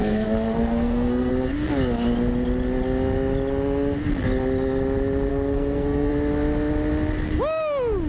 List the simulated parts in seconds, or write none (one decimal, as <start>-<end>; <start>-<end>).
0.0-1.3; 5.3-6.1